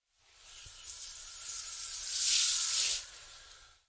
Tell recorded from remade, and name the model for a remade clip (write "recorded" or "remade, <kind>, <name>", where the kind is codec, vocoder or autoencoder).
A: recorded